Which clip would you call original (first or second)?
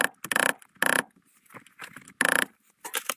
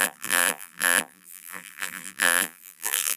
first